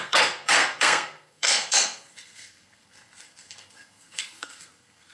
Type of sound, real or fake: fake